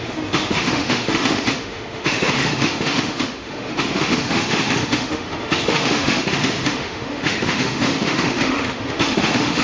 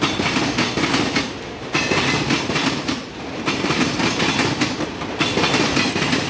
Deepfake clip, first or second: first